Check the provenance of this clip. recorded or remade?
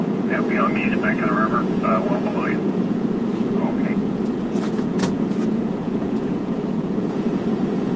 remade